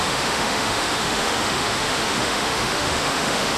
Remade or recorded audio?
remade